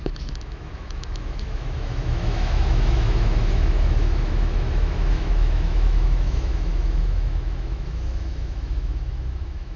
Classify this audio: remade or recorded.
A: remade